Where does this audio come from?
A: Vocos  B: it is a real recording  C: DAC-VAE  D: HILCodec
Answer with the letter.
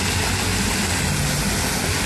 B